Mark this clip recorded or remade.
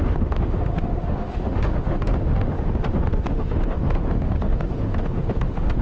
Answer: remade